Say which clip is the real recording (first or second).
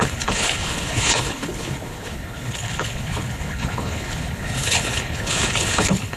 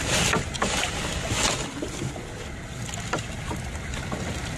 second